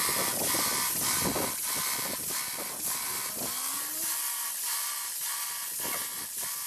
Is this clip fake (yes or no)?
no